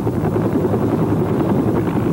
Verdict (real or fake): fake